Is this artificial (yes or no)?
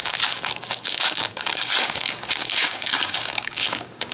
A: yes